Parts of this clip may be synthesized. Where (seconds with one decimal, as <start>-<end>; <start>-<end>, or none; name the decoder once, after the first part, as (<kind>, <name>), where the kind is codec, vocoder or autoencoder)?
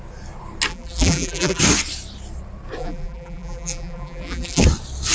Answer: 0.7-1.6 (vocoder, BigVGAN v2); 2.8-4.6